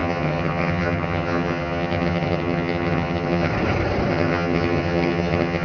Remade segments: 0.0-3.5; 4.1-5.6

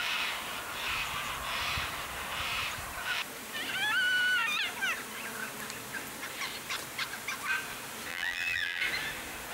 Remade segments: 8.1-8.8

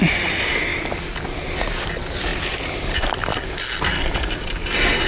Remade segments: none

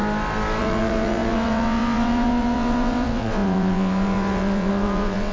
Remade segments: 0.6-5.3

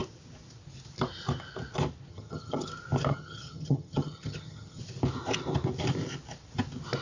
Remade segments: 2.1-2.7; 3.1-4.8

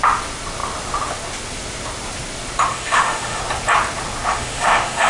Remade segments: 2.7-3.4; 4.3-5.1

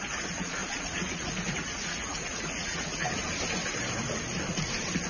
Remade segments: 0.0-3.2